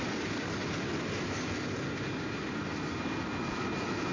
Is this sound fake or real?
real